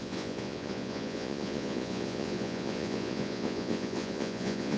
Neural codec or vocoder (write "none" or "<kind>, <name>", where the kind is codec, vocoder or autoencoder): vocoder, Vocos